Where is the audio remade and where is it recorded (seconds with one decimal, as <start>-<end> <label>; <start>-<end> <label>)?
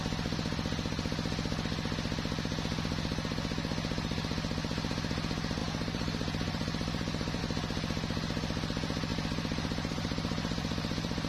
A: 0.0-5.6 recorded; 5.6-7.4 remade; 7.4-9.1 recorded; 9.1-11.3 remade